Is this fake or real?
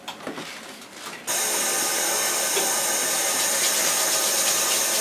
real